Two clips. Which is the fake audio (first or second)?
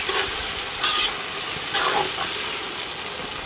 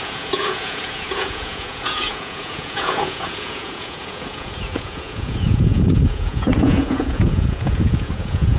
second